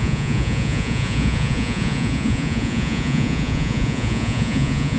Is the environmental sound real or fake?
fake